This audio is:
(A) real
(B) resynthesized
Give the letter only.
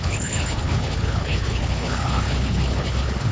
B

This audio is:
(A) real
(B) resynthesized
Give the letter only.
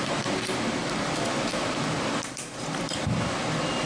A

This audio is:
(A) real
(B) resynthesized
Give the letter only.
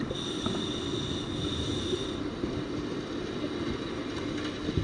A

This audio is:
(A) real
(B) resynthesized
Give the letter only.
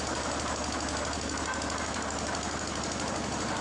A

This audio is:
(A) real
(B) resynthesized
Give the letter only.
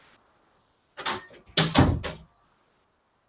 A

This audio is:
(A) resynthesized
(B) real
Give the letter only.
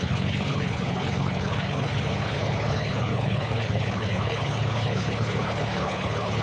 A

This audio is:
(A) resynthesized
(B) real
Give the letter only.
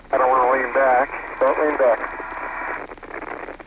B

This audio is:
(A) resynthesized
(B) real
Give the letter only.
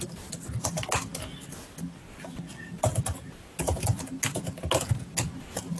B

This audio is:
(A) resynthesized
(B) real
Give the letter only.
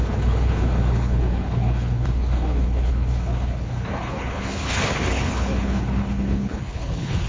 A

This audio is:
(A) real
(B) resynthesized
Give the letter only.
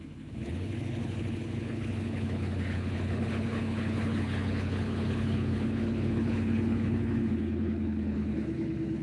B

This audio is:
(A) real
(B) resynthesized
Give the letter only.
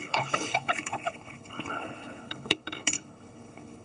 B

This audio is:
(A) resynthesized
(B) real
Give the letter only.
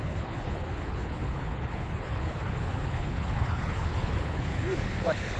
A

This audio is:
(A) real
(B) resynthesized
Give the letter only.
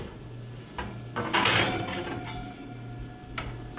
A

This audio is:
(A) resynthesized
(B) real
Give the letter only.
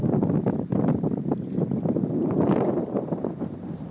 B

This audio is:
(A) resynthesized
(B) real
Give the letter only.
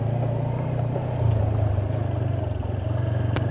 B